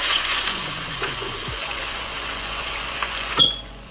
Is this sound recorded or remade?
remade